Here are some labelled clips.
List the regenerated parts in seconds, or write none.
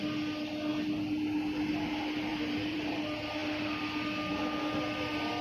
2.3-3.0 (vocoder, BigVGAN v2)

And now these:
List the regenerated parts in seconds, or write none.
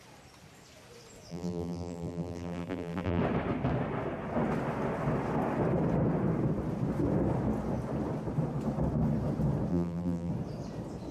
1.3-3.2 (vocoder, BigVGAN v2); 9.7-10.3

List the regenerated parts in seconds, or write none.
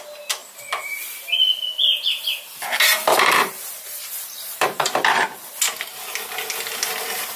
2.9-5.5 (vocoder, BigVGAN v2)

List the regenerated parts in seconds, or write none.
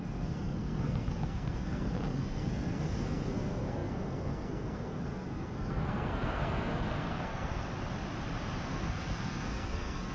0.0-7.7 (codec, SNAC); 8.6-10.1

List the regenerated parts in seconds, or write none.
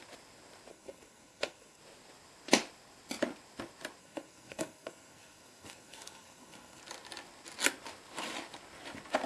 0.7-1.8 (codec, SNAC); 4.0-6.8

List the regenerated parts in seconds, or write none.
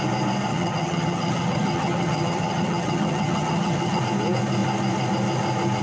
0.5-4.0 (vocoder, HiFi-GAN)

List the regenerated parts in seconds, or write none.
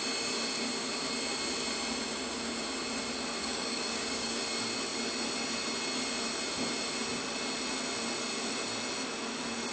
3.4-4.4 (codec, DAC)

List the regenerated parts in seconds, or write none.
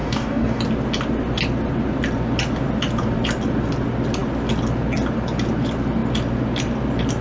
0.0-0.6 (codec, DAC)